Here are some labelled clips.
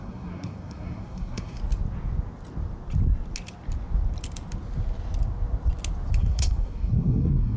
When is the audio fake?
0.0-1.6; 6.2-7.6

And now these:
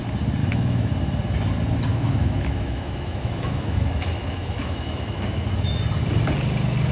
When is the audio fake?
0.4-0.9; 1.9-5.8

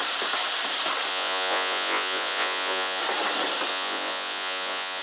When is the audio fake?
1.1-3.0; 3.7-5.0

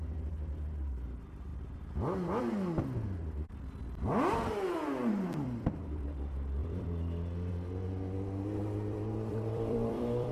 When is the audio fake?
5.0-5.8; 6.6-7.5; 9.3-10.3